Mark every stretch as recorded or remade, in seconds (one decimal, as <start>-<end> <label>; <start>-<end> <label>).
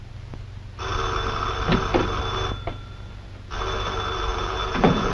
0.0-4.3 recorded; 4.3-5.1 remade